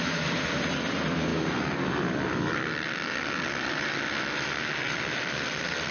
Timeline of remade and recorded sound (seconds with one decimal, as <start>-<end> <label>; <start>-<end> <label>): 0.0-1.3 remade; 1.3-4.8 recorded; 4.8-5.9 remade